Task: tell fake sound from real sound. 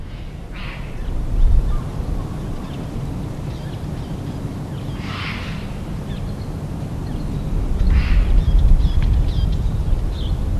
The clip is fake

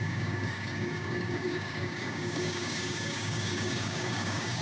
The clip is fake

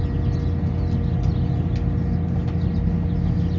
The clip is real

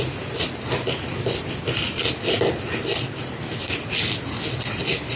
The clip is real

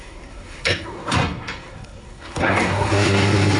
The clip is fake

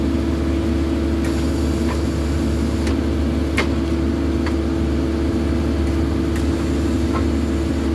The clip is real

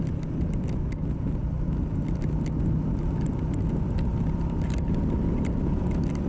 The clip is real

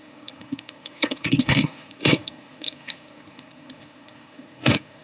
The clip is fake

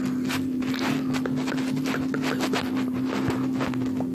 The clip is real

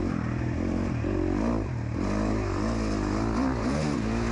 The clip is real